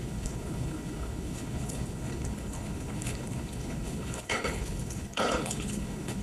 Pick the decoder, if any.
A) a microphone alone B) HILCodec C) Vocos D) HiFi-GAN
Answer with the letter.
B